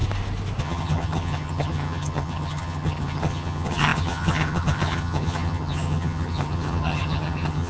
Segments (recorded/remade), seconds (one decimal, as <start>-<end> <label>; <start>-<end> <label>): 0.0-0.6 recorded; 0.6-7.7 remade